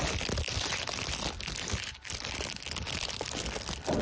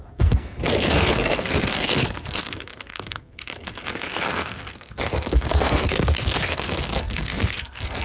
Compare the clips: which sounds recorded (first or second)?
first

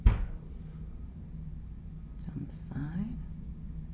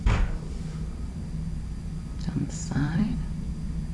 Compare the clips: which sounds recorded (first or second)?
first